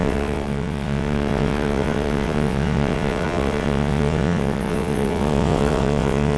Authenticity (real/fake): fake